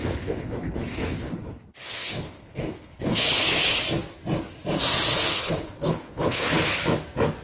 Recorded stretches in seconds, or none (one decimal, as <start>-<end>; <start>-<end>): 3.8-5.1; 6.5-7.4

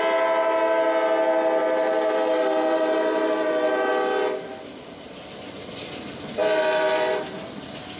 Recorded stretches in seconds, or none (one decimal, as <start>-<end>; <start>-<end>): 0.0-1.6; 3.9-8.0

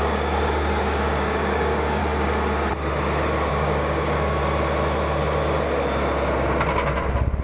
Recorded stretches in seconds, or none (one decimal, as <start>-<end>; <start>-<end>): 2.0-3.5; 4.4-7.4

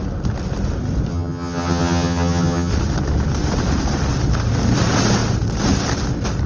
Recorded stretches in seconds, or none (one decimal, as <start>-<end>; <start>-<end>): 0.0-1.1; 2.7-6.5

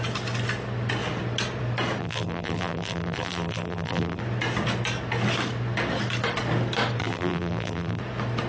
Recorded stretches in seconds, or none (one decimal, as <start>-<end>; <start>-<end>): 0.0-2.0; 4.2-7.0; 8.0-8.5

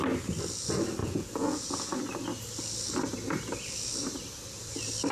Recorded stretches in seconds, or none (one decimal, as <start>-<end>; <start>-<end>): 0.0-1.0; 1.9-5.1

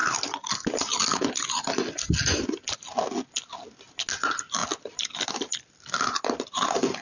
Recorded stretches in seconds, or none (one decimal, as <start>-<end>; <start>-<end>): 0.0-7.0

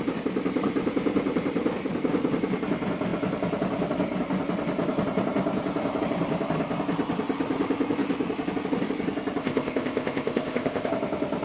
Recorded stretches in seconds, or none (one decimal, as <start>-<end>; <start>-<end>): 0.0-9.4; 10.9-11.4